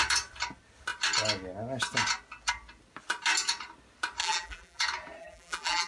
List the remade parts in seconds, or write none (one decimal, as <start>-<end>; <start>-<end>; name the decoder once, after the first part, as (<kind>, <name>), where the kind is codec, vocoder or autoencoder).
4.2-4.8 (vocoder, BigVGAN v2); 5.2-5.9